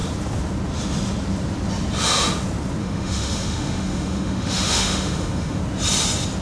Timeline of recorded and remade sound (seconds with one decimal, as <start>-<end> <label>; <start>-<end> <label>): 0.0-2.8 recorded; 2.8-5.6 remade; 5.6-6.4 recorded